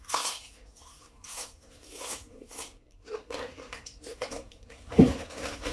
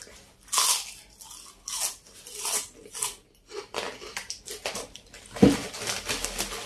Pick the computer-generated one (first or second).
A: first